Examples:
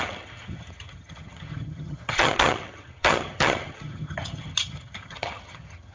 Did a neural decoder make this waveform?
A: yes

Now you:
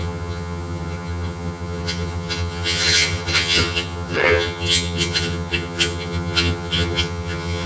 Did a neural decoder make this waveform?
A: yes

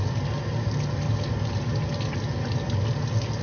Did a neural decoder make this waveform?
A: no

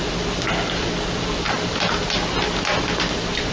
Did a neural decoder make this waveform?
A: no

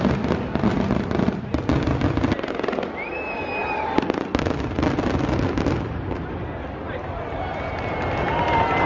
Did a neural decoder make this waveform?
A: no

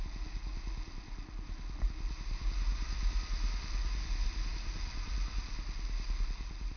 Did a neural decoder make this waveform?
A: no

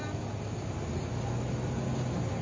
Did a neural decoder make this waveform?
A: no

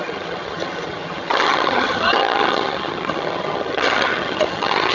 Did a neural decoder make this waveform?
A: yes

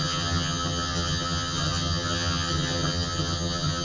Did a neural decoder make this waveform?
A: yes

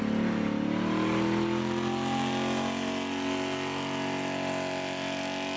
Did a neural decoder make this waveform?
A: no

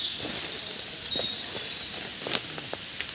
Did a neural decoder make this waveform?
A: no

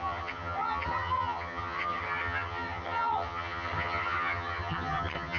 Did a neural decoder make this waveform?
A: yes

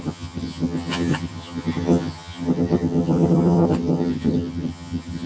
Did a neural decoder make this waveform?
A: yes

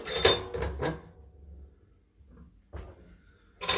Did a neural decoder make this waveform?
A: no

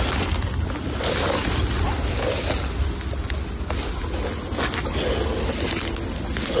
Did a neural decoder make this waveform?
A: no